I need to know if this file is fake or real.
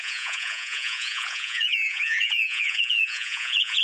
fake